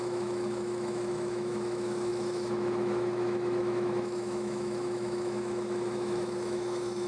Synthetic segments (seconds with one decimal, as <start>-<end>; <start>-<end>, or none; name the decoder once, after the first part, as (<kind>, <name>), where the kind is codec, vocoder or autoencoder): 0.0-7.1 (autoencoder, DAC-VAE)